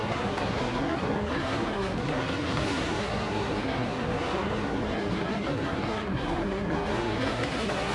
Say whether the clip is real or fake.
fake